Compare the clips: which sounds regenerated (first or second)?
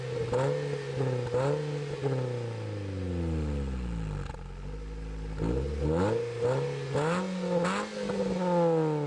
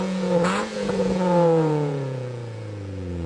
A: second